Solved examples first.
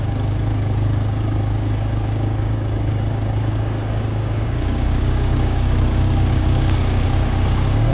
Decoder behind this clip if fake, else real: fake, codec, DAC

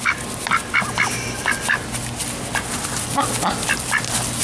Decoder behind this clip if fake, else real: real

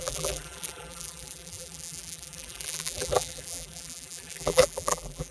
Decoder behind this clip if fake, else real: fake, vocoder, BigVGAN v2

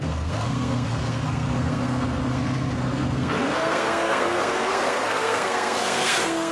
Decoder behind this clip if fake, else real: fake, codec, SNAC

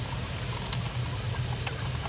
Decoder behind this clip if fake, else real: real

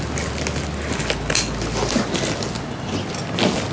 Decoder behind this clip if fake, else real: real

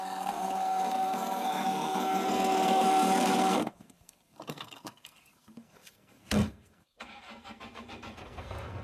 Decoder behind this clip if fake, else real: fake, codec, SNAC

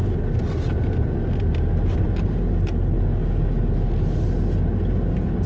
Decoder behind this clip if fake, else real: real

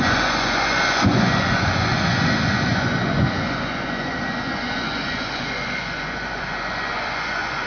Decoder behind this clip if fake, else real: fake, vocoder, Vocos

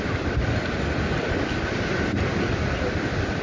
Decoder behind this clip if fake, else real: real